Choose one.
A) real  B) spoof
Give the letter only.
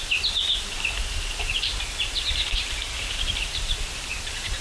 B